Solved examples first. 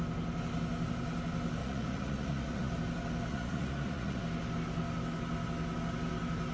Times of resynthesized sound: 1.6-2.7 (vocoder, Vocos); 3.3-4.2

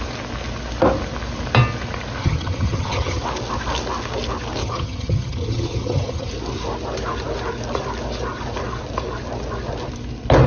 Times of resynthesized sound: 2.2-3.2 (vocoder, HiFi-GAN); 4.6-6.3

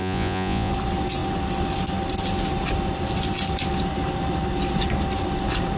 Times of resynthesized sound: 0.0-0.7 (vocoder, Vocos)

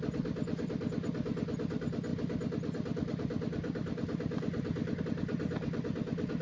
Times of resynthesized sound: none

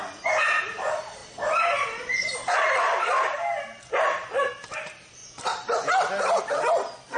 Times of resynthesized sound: none